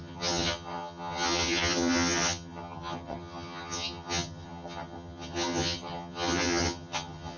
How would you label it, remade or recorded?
remade